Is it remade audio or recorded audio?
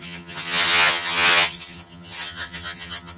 remade